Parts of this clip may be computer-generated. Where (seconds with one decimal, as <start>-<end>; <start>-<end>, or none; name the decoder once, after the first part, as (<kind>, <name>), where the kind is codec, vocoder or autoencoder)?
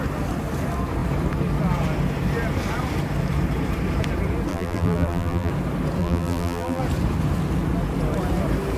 4.5-5.5 (vocoder, BigVGAN v2); 6.0-6.8